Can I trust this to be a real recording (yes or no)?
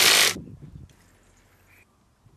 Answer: yes